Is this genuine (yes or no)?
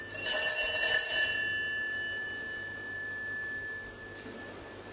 yes